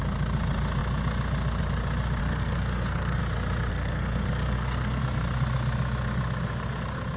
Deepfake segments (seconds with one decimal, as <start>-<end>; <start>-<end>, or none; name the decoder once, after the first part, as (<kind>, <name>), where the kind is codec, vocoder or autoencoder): 2.2-3.2 (codec, SNAC); 3.7-5.0